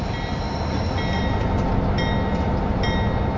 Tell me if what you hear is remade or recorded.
recorded